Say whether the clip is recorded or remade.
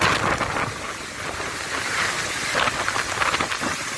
recorded